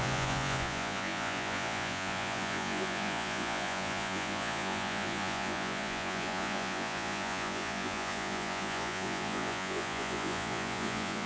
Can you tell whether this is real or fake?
fake